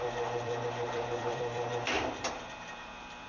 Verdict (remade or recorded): remade